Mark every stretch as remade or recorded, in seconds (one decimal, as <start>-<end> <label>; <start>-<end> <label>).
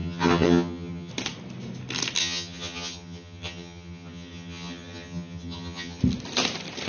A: 0.0-1.1 remade; 1.1-2.2 recorded; 2.2-6.0 remade; 6.0-6.9 recorded